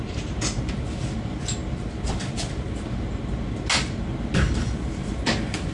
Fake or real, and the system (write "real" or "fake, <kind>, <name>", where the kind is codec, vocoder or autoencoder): real